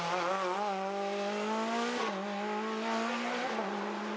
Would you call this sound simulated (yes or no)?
no